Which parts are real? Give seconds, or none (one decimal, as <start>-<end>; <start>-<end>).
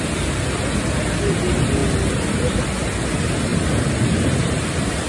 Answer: 0.0-5.1